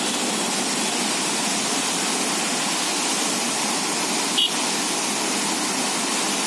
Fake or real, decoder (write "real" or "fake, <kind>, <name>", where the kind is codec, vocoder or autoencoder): real